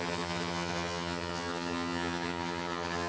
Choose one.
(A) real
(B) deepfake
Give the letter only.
B